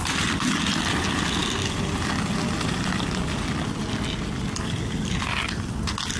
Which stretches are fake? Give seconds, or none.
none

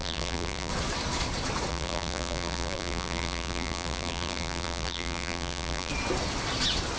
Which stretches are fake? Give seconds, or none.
0.0-0.7 (vocoder, BigVGAN v2); 1.7-5.9

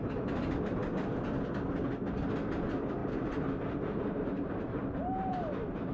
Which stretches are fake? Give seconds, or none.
3.0-5.9 (vocoder, BigVGAN v2)

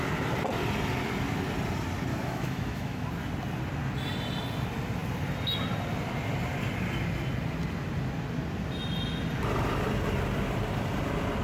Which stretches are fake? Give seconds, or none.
2.1-3.1 (autoencoder, DAC-VAE)

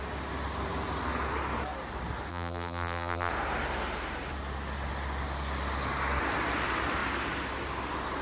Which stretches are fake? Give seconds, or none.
2.3-3.3 (vocoder, BigVGAN v2)

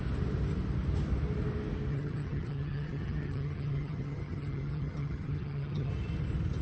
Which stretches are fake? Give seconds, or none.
1.9-5.9 (vocoder, HiFi-GAN)